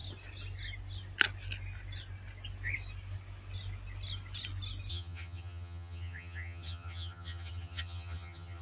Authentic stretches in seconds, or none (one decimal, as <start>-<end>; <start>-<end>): 0.0-4.9